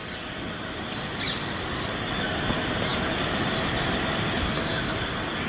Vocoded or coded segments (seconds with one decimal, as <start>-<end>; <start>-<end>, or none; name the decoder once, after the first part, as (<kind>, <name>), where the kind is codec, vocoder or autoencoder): none